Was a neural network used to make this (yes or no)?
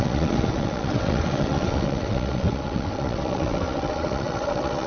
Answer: yes